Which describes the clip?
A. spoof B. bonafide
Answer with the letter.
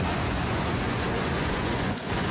A